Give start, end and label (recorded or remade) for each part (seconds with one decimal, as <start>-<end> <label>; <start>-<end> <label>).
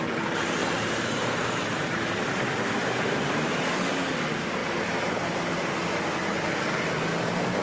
0.0-0.6 recorded; 0.6-3.6 remade; 3.6-4.6 recorded; 4.6-5.7 remade; 5.7-7.6 recorded